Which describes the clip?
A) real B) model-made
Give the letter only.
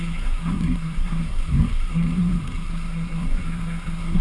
B